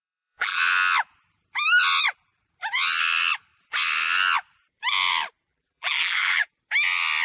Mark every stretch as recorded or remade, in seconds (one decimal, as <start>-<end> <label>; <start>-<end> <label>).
0.0-0.6 remade; 0.6-5.5 recorded; 5.5-6.5 remade; 6.5-7.2 recorded